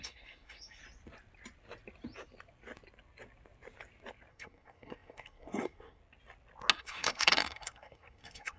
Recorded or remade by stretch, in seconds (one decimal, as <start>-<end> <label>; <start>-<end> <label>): 0.0-0.8 remade; 0.8-4.3 recorded; 4.3-6.0 remade; 6.0-6.8 recorded; 6.8-8.6 remade